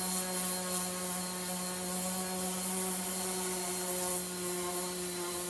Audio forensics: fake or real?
real